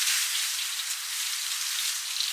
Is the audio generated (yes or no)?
no